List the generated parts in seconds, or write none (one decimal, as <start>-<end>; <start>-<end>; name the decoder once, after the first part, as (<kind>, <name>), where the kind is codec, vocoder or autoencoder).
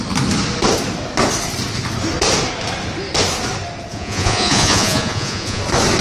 3.9-5.6 (vocoder, Vocos)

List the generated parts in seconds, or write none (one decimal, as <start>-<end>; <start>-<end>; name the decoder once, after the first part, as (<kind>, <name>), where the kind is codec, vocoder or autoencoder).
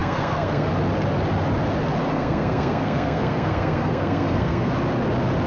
0.0-0.7 (codec, SNAC); 2.1-4.7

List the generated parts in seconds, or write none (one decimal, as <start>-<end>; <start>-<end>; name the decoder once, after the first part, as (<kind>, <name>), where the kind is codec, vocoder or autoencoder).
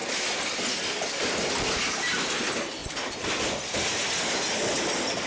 none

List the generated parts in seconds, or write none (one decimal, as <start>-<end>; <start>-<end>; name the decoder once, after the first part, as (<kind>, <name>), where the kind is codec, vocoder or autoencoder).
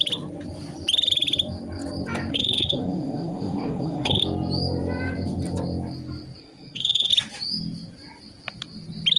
2.3-4.2 (codec, SNAC); 6.4-7.1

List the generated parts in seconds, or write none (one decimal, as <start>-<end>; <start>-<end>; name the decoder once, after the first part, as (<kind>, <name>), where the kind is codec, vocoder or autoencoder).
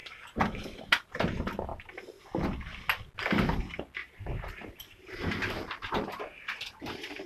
4.0-6.2 (vocoder, BigVGAN v2)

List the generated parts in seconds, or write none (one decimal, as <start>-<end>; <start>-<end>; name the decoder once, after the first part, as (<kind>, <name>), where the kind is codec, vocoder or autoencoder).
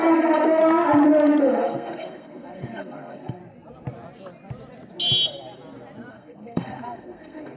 0.0-0.6 (codec, SNAC); 1.4-3.4; 6.1-7.6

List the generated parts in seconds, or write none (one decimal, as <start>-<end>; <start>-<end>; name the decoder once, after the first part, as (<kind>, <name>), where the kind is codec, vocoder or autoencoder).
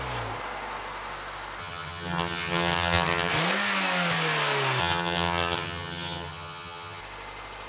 1.6-3.3 (vocoder, HiFi-GAN); 4.8-7.0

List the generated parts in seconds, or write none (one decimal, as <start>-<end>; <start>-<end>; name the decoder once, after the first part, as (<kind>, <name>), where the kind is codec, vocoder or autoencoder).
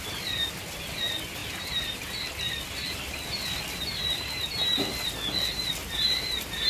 1.4-2.0 (vocoder, BigVGAN v2)